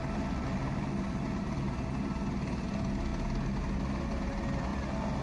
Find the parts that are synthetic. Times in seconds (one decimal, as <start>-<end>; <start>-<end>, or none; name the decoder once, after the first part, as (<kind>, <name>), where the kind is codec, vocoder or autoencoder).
none